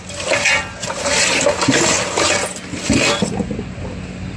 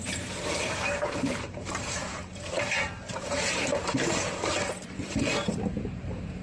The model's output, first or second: second